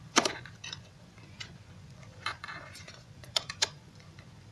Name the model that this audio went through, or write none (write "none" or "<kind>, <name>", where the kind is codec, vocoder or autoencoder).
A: vocoder, Vocos